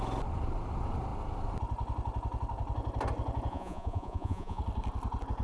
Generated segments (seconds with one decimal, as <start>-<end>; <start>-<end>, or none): 3.5-4.6